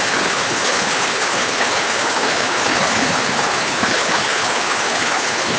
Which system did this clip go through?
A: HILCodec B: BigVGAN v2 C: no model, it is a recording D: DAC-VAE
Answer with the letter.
A